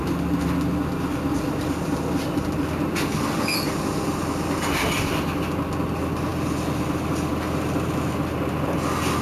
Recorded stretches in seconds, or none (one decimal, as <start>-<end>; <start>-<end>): 0.0-9.2

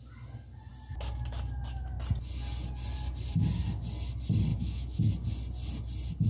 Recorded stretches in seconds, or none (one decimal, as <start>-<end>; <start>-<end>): 0.0-4.5; 5.1-6.3

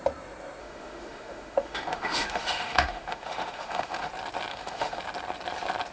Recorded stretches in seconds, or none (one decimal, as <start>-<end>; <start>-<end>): 0.0-0.6; 4.1-4.5; 5.0-5.9